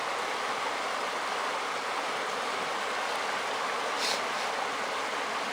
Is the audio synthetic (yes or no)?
no